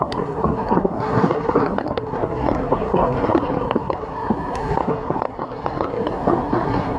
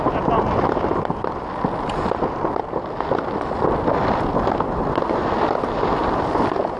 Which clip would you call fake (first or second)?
first